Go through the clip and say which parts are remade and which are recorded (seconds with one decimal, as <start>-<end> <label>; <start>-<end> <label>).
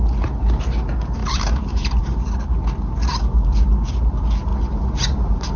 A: 0.0-1.2 recorded; 1.2-2.0 remade; 2.0-4.5 recorded; 4.5-5.6 remade